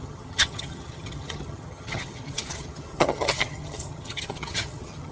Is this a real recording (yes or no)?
no